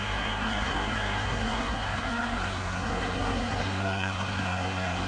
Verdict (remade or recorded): remade